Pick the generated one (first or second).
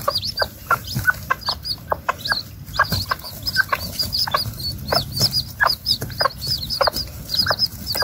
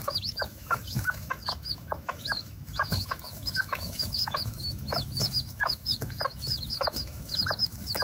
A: second